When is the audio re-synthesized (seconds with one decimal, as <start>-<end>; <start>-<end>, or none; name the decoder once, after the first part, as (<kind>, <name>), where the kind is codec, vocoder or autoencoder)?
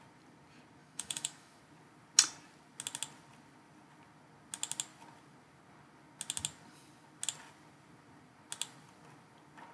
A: 0.8-1.6 (autoencoder, DAC-VAE)